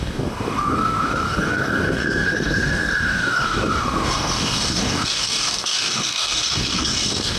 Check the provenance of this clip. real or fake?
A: fake